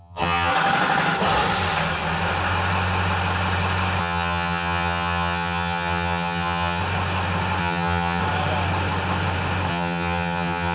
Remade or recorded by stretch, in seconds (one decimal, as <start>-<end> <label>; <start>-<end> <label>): 0.0-0.5 remade; 0.5-4.0 recorded; 4.0-6.8 remade; 6.8-7.6 recorded; 7.6-8.2 remade; 8.2-9.7 recorded; 9.7-10.7 remade